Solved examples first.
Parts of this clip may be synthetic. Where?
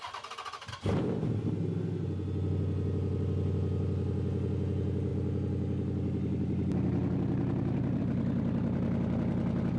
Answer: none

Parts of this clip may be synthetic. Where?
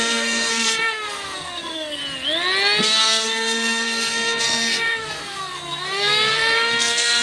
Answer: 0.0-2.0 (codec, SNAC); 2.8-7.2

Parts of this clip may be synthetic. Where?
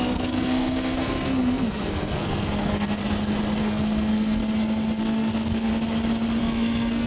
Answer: 0.0-3.0 (codec, SNAC); 3.6-4.4; 5.0-5.7; 6.4-7.1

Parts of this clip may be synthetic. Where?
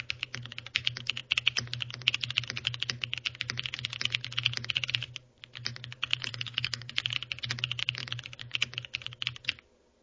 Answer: 6.3-6.9 (codec, SNAC)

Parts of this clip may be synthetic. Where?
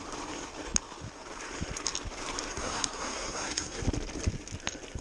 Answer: 2.5-3.8 (codec, SNAC)